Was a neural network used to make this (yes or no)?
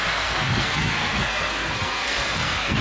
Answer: yes